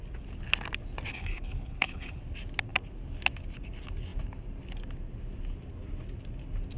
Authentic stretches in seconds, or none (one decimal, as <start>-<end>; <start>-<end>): 0.0-1.1; 2.2-6.8